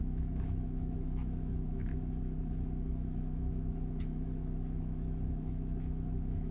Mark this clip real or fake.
fake